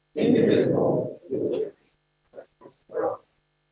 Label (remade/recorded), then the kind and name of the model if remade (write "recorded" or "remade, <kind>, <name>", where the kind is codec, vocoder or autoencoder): recorded